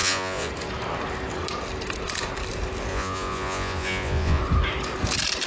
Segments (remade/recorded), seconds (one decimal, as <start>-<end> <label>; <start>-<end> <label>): 0.0-0.5 remade; 0.5-2.9 recorded; 2.9-4.4 remade; 4.4-5.5 recorded